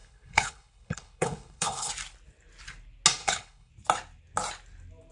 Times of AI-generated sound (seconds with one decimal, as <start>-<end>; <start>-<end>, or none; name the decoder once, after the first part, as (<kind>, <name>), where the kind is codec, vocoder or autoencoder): 0.0-1.9 (codec, HILCodec); 3.2-3.7